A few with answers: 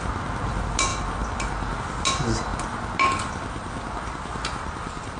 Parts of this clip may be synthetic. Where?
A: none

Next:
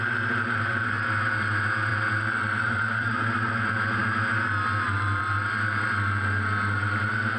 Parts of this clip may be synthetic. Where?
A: none

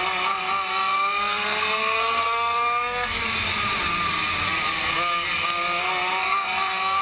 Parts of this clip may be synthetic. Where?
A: 0.0-3.2 (codec, SNAC); 5.8-7.0

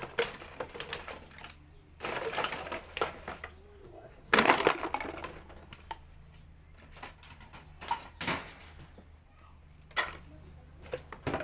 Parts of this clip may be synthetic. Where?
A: 3.8-4.5 (codec, SNAC)

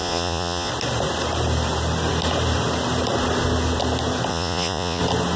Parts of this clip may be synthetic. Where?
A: 0.0-0.7 (vocoder, Vocos); 4.3-5.0